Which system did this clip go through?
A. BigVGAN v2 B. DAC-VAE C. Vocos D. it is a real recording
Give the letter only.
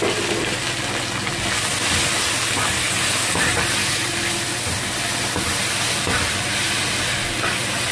D